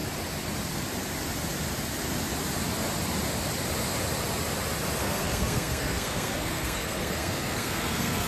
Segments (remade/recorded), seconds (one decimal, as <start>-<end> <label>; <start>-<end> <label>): 0.0-5.0 recorded; 5.0-8.3 remade

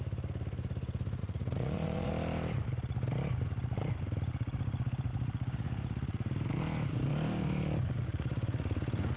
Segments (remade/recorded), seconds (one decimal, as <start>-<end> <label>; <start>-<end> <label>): 0.0-1.2 recorded; 1.2-2.1 remade; 2.1-9.2 recorded

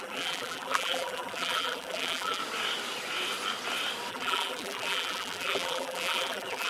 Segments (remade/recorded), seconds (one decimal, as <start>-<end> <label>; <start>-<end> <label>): 0.0-2.4 remade; 2.4-4.1 recorded; 4.1-6.7 remade

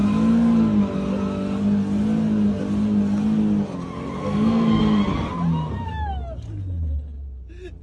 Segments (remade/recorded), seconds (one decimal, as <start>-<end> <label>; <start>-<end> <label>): 0.0-4.2 recorded; 4.2-4.8 remade; 4.8-7.8 recorded